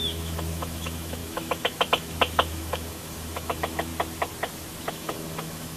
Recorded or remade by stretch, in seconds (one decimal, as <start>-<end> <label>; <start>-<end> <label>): 0.0-3.9 remade; 3.9-4.9 recorded; 4.9-5.8 remade